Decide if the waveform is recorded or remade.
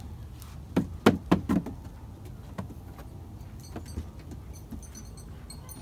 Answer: recorded